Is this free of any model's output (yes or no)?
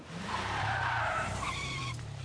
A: no